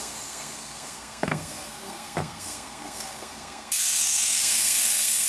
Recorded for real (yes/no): no